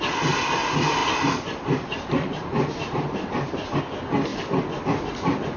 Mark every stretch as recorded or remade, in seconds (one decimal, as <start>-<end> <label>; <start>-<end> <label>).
0.0-1.0 recorded; 1.0-3.8 remade; 3.8-5.6 recorded